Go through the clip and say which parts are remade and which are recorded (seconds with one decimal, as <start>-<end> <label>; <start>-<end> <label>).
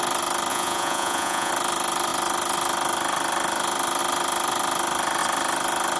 0.0-0.5 recorded; 0.5-1.5 remade; 1.5-6.0 recorded